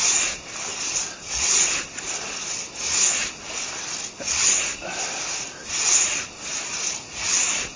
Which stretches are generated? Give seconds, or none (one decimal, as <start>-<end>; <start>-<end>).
0.7-2.7